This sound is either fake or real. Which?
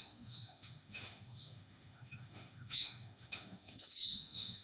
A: fake